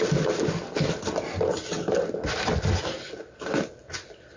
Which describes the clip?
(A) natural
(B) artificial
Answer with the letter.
A